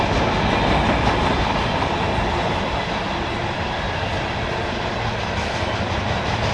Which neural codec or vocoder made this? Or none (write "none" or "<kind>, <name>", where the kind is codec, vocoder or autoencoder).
none